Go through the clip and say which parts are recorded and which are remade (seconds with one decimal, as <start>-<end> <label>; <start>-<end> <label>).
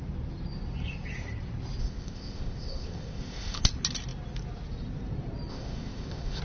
0.0-1.8 recorded; 1.8-3.6 remade; 3.6-5.5 recorded; 5.5-6.4 remade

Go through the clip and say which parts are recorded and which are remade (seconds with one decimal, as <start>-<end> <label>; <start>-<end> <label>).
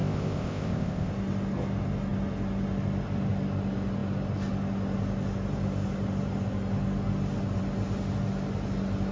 0.0-1.1 remade; 1.1-9.1 recorded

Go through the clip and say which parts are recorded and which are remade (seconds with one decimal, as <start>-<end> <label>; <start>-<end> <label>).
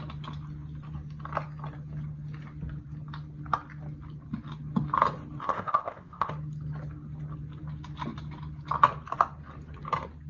0.0-5.4 recorded; 5.4-6.3 remade; 6.3-10.3 recorded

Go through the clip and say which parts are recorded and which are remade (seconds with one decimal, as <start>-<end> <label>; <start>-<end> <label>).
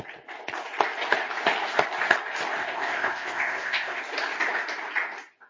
0.0-2.6 recorded; 2.6-4.0 remade; 4.0-5.5 recorded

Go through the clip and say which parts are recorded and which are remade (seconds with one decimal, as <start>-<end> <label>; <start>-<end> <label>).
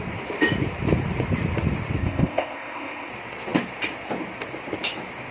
0.0-2.0 recorded; 2.0-3.1 remade; 3.1-5.3 recorded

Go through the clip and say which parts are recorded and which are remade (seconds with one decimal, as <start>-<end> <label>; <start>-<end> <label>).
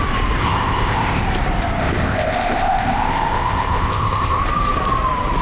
0.0-0.4 recorded; 0.4-1.2 remade; 1.2-1.8 recorded; 1.8-4.4 remade; 4.4-5.4 recorded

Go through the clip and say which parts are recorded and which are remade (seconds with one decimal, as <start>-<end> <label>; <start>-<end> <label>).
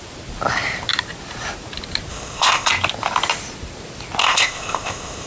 0.0-2.1 recorded; 2.1-2.7 remade; 2.7-4.2 recorded; 4.2-5.3 remade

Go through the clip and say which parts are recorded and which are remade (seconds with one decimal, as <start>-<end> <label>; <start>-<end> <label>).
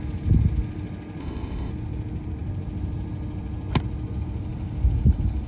0.0-1.2 recorded; 1.2-1.7 remade; 1.7-5.5 recorded